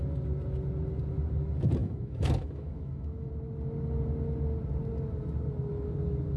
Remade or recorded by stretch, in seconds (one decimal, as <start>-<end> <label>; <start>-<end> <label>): 0.0-1.8 recorded; 1.8-3.3 remade; 3.3-6.4 recorded